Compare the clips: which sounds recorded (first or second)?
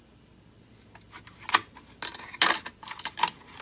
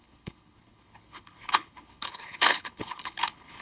first